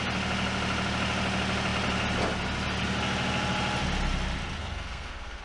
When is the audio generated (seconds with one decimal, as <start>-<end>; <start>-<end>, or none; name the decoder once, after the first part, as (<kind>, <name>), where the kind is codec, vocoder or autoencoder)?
4.6-5.4 (codec, SNAC)